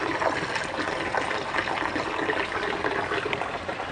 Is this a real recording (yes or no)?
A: yes